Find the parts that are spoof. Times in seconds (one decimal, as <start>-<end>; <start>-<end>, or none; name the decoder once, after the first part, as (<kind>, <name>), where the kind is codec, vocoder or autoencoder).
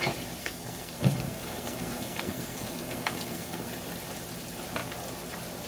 0.4-3.7 (codec, SNAC)